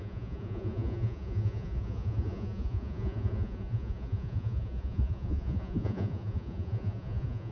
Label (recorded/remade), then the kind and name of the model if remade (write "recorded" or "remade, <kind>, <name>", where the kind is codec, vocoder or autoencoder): remade, vocoder, Vocos